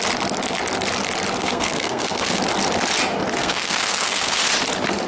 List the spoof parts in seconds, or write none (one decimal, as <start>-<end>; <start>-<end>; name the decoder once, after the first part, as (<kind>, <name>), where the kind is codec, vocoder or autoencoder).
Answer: 1.4-2.4 (codec, SNAC); 3.4-4.4

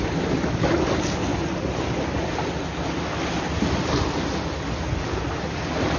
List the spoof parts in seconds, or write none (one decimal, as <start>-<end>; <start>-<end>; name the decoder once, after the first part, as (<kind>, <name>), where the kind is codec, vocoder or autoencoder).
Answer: none

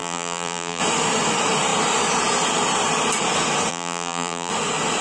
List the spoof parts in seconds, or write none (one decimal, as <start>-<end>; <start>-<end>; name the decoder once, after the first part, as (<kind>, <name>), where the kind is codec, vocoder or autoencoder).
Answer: 0.0-0.8 (vocoder, BigVGAN v2); 3.7-4.5

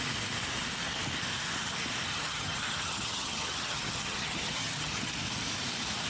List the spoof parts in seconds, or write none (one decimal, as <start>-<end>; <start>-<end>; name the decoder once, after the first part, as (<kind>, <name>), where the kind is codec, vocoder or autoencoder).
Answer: 2.1-5.1 (vocoder, HiFi-GAN)